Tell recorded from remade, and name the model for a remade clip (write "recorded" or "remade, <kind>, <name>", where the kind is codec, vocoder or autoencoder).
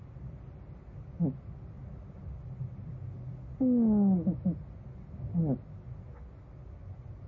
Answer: recorded